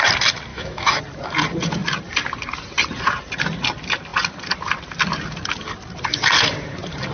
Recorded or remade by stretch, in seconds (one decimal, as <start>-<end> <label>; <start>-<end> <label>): 0.0-0.5 recorded; 0.5-1.0 remade; 1.0-7.1 recorded